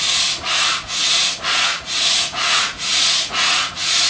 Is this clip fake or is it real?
fake